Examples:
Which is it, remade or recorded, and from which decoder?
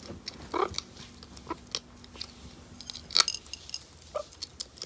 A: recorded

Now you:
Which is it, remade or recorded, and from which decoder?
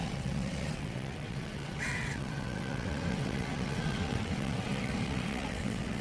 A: remade, vocoder, WaveNeXt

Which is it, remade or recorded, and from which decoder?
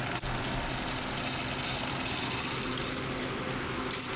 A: recorded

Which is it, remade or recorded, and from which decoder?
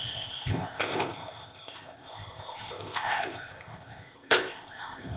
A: remade, codec, ZipCodec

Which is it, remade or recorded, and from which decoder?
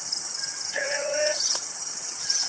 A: remade, vocoder, HiFi-GAN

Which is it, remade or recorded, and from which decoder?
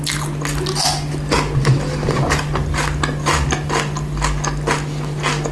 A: recorded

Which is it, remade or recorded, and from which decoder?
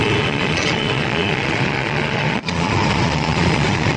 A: remade, vocoder, Vocos